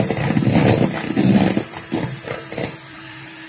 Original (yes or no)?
no